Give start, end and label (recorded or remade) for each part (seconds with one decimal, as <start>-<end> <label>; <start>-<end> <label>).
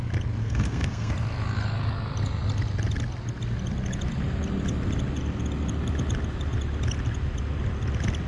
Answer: 0.0-0.4 recorded; 0.4-1.1 remade; 1.1-8.3 recorded